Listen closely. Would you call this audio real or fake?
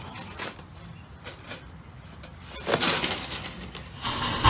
real